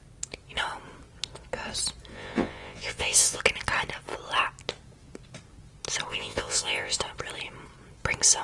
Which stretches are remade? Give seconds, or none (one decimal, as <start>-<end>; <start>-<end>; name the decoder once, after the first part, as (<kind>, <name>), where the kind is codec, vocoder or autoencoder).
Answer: 2.1-3.4 (vocoder, Vocos); 6.1-7.0